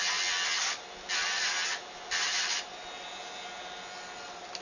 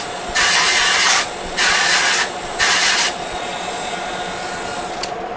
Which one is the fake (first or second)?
second